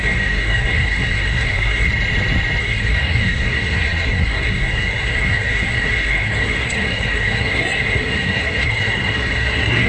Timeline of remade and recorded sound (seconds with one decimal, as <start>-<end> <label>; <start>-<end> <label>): 0.0-1.9 remade; 1.9-2.6 recorded; 2.6-9.9 remade